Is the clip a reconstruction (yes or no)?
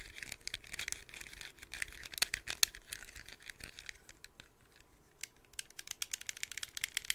no